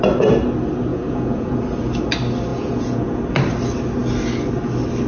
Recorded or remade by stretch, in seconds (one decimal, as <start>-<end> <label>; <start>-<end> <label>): 0.0-0.9 recorded; 0.9-1.6 remade; 1.6-2.5 recorded; 2.5-3.2 remade; 3.2-5.1 recorded